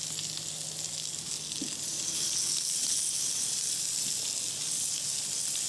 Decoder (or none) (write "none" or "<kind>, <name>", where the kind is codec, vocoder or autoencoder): none